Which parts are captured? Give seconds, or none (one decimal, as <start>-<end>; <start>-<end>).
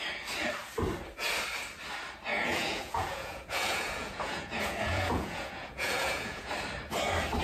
0.0-2.3; 6.5-7.4